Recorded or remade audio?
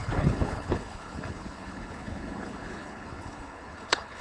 remade